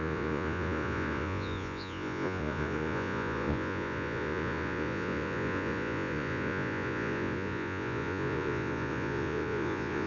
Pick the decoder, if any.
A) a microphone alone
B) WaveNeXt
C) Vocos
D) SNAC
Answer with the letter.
C